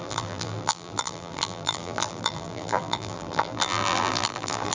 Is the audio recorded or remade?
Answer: remade